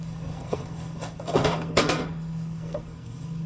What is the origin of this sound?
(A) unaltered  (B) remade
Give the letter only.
B